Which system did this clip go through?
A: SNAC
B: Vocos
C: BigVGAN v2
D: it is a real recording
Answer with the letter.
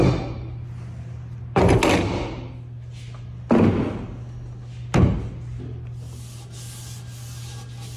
D